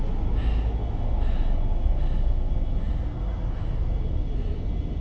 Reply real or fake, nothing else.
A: real